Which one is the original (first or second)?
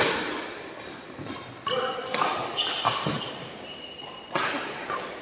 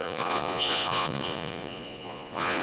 first